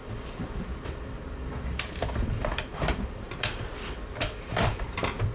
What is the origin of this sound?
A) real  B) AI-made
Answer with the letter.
B